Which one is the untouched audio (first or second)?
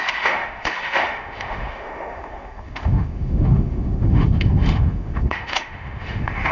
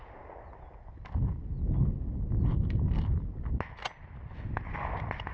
second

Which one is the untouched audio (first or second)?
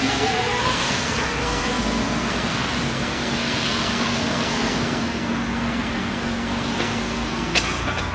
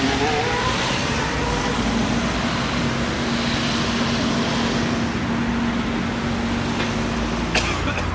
second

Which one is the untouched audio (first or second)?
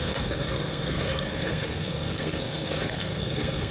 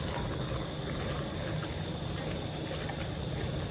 second